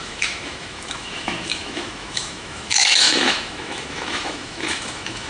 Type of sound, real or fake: fake